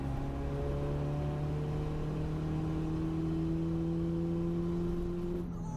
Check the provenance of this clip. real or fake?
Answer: real